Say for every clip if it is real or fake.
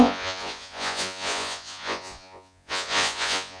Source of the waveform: fake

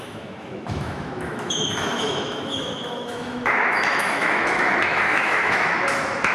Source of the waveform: fake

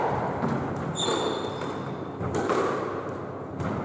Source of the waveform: real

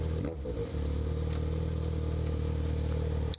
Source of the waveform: fake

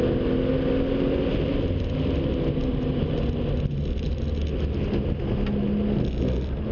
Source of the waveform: real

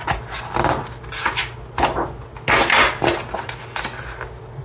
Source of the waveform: real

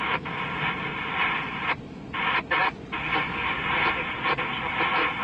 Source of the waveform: real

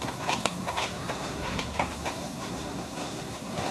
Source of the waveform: fake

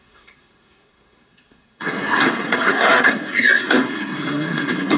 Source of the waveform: fake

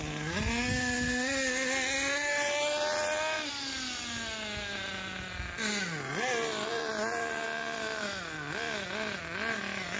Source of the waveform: real